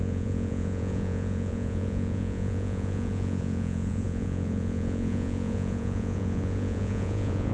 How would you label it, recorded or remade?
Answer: remade